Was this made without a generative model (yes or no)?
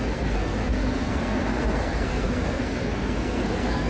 no